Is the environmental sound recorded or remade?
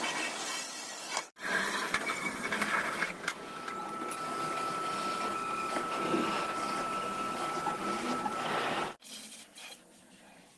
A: remade